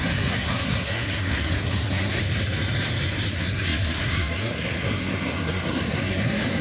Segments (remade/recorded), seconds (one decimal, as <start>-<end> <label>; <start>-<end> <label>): 0.0-2.2 remade; 2.2-3.3 recorded; 3.3-6.6 remade